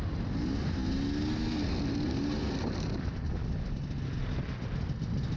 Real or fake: real